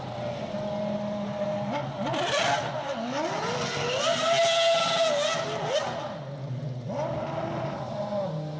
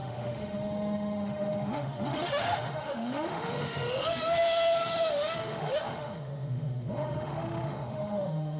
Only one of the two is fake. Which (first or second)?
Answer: second